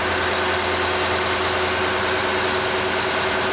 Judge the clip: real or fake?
real